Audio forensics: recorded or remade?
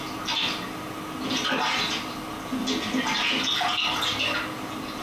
recorded